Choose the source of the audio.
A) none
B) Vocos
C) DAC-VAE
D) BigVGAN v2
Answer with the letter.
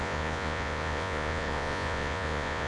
B